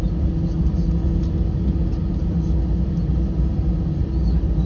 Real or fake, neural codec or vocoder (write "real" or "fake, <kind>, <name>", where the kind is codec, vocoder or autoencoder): real